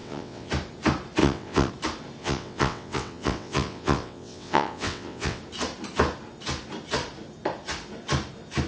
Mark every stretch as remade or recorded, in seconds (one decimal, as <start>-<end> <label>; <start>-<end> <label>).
0.0-0.5 remade; 0.5-1.2 recorded; 1.2-1.7 remade; 1.7-2.2 recorded; 2.2-5.4 remade; 5.4-8.7 recorded